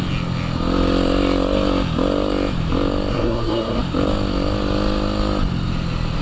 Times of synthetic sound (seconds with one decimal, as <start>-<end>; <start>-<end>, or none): 3.1-3.8